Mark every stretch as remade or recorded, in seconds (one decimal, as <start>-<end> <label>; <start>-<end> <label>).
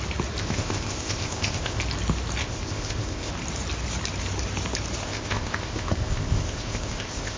0.0-0.4 recorded; 0.4-1.8 remade; 1.8-2.4 recorded; 2.4-3.3 remade; 3.3-5.0 recorded; 5.0-7.4 remade